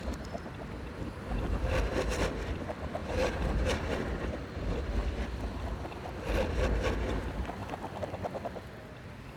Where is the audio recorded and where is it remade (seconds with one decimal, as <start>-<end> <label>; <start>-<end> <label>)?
0.0-9.4 remade